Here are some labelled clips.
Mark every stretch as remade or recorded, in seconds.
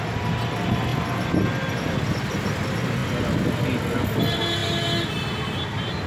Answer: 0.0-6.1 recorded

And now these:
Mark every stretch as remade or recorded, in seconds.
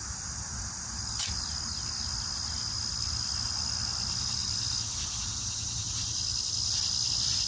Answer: 0.0-7.5 recorded